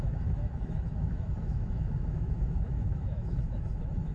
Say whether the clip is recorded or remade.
remade